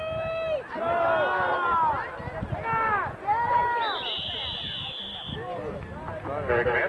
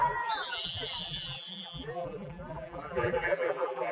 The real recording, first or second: first